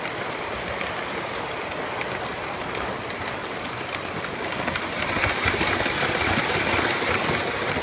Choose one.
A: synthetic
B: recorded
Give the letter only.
B